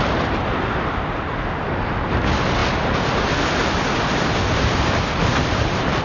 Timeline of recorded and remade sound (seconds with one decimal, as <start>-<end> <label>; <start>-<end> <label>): 0.0-6.0 recorded